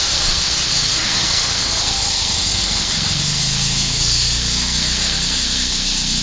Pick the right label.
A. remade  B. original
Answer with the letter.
A